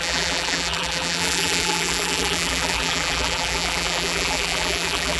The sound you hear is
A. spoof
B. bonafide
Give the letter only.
A